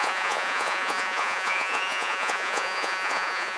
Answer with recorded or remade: remade